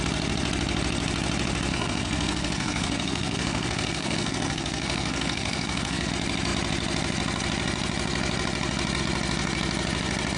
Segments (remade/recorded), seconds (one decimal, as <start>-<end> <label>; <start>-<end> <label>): 0.0-1.7 recorded; 1.7-6.1 remade; 6.1-10.4 recorded